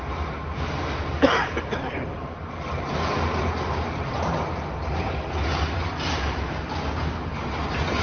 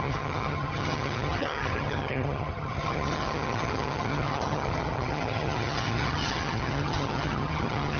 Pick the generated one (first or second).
second